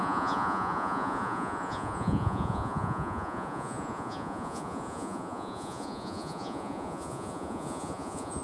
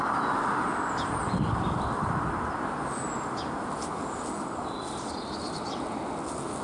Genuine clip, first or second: second